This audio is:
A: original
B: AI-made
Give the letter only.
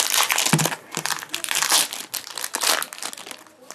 A